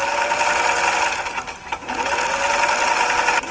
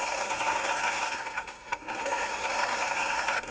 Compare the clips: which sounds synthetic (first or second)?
second